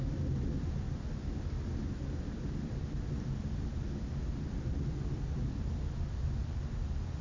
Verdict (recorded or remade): recorded